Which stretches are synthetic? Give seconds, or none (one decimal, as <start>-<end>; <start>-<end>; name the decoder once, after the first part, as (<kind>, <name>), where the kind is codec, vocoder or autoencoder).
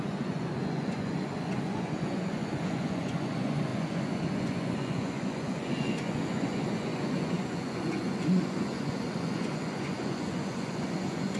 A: 0.0-11.4 (vocoder, Vocos)